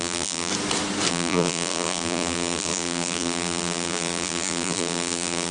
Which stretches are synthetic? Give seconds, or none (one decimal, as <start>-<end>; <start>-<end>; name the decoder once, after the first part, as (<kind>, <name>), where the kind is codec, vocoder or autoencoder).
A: 0.0-0.5 (vocoder, BigVGAN v2); 1.1-5.5